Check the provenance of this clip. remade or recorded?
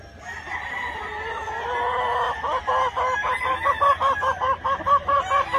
recorded